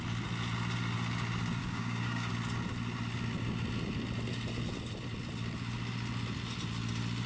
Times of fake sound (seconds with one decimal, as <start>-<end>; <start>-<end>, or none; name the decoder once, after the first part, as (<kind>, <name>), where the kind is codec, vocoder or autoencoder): 1.6-2.3 (codec, DAC)